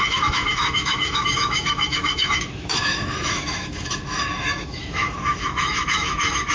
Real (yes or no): no